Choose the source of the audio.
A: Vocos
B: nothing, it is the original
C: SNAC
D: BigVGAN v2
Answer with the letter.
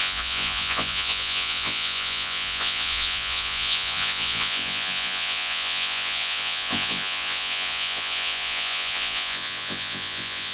A